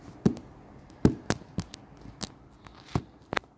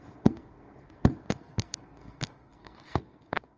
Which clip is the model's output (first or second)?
second